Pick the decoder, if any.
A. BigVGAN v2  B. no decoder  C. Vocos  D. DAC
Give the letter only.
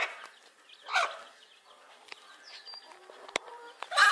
B